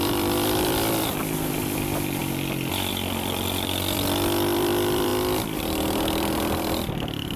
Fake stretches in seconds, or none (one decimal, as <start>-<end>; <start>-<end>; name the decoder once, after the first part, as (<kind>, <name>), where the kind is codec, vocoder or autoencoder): 0.0-2.2 (vocoder, BigVGAN v2); 2.9-5.1; 5.6-7.4